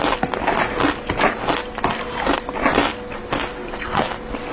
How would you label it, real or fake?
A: real